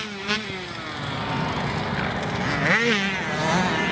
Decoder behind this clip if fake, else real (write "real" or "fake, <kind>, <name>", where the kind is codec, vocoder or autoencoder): real